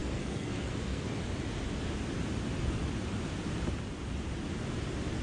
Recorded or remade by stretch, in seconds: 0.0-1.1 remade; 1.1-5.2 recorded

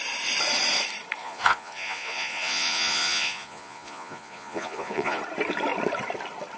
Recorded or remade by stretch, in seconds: 0.0-1.2 recorded; 1.2-5.2 remade; 5.2-6.6 recorded

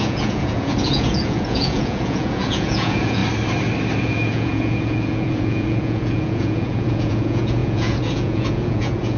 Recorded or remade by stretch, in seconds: 0.0-3.2 remade; 3.2-4.0 recorded; 4.0-9.2 remade

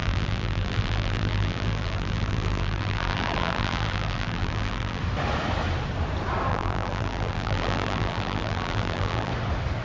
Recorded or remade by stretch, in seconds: 0.0-5.0 remade; 5.0-6.5 recorded; 6.5-9.3 remade; 9.3-9.8 recorded

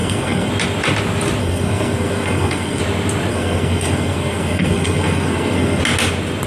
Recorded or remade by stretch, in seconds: 0.0-0.5 remade; 0.5-1.4 recorded; 1.4-2.8 remade; 2.8-3.3 recorded; 3.3-5.8 remade; 5.8-6.5 recorded

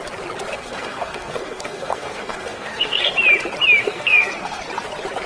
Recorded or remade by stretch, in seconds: 0.0-0.5 recorded; 0.5-3.1 remade; 3.1-3.8 recorded; 3.8-4.6 remade; 4.6-5.3 recorded